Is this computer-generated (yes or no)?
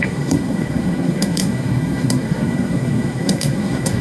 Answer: yes